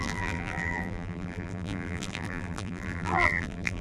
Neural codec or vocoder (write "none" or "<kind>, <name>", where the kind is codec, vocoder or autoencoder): vocoder, BigVGAN v2